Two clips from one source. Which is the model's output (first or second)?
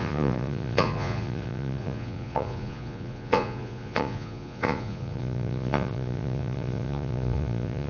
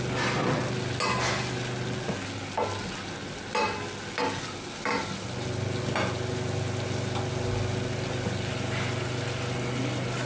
first